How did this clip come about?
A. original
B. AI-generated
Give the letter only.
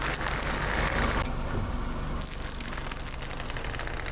A